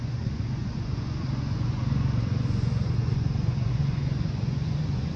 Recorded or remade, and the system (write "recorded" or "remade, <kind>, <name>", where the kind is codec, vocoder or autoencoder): remade, vocoder, Vocos